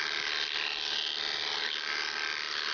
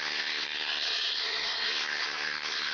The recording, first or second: first